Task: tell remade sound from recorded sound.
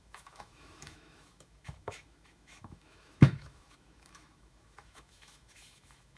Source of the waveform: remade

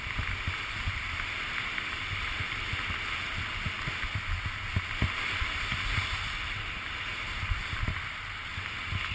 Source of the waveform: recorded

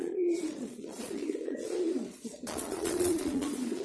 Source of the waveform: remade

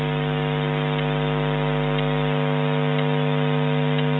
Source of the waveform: recorded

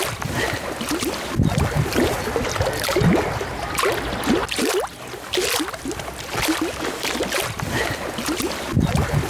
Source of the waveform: recorded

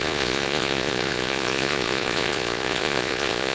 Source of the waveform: remade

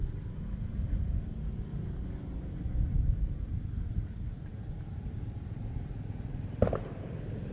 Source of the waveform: recorded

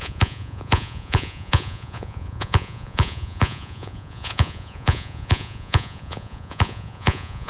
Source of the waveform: remade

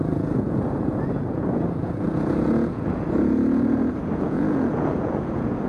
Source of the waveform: remade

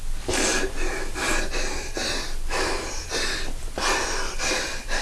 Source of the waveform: recorded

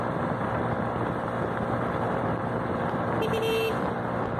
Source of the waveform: recorded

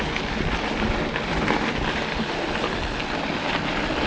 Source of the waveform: recorded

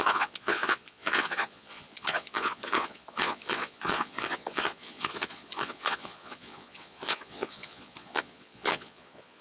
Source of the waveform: remade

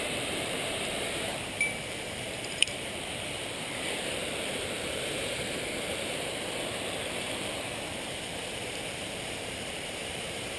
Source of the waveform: remade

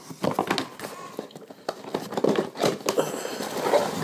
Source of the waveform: recorded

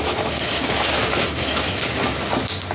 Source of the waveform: recorded